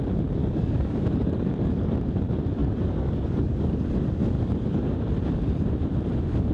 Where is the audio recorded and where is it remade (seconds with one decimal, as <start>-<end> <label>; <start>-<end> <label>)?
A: 0.0-0.4 recorded; 0.4-1.9 remade; 1.9-2.6 recorded; 2.6-3.8 remade; 3.8-4.2 recorded; 4.2-5.0 remade; 5.0-6.5 recorded